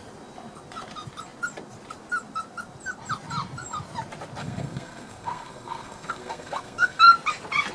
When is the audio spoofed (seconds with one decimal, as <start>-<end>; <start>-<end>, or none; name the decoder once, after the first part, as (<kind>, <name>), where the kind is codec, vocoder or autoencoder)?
4.4-7.0 (codec, SNAC)